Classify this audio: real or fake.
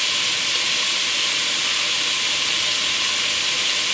real